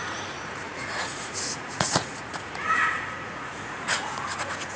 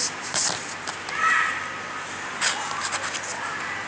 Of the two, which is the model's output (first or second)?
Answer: first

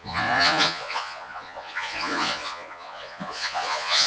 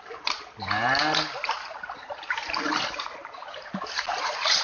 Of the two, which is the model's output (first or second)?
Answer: first